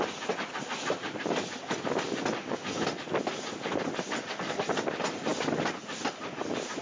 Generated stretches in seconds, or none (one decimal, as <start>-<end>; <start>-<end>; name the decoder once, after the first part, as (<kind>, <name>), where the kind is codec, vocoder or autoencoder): none